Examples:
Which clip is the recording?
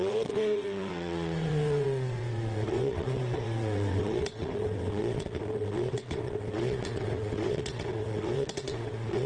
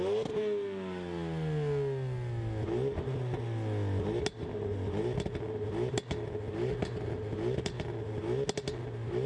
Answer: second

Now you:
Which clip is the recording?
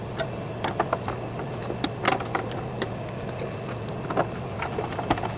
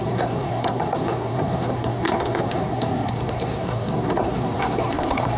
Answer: first